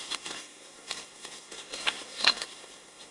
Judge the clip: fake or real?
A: fake